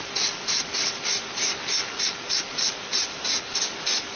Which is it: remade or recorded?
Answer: recorded